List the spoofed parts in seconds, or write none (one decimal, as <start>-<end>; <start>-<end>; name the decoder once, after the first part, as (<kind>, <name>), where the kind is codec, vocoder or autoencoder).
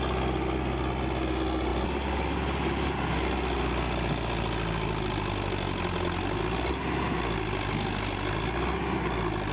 none